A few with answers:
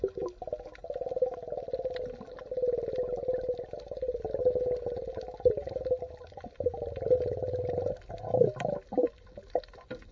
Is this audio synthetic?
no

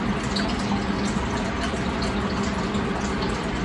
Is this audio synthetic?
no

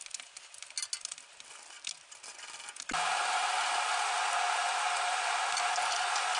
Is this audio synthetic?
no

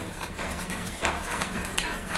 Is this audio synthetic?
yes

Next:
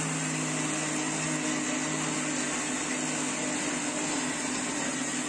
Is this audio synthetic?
no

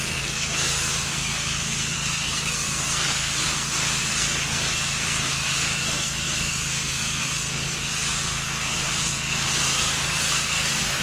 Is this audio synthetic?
yes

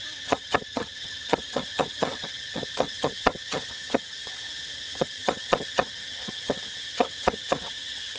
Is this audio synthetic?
yes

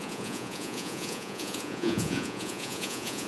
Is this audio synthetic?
yes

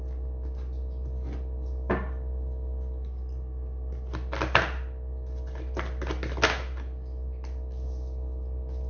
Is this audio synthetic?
no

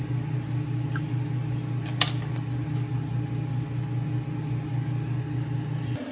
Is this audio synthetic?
no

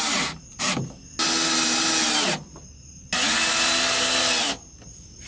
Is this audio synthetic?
no